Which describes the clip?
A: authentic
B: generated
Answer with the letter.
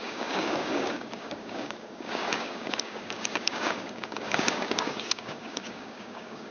B